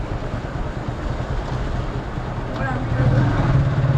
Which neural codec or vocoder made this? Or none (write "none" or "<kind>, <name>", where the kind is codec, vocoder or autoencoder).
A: none